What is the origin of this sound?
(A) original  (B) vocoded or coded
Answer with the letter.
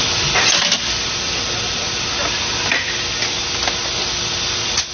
A